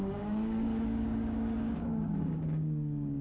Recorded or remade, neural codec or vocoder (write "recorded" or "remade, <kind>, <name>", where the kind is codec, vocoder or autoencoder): remade, codec, DAC